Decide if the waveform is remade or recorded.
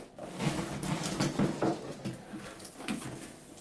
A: recorded